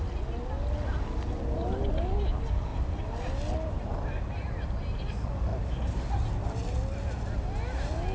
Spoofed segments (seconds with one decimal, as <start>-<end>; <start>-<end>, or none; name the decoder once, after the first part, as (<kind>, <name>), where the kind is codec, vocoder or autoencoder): none